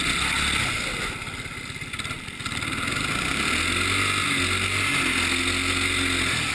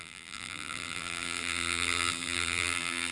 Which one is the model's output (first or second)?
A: second